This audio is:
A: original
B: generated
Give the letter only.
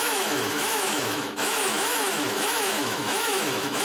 B